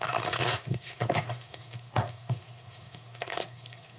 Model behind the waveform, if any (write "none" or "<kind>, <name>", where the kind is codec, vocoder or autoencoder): codec, SNAC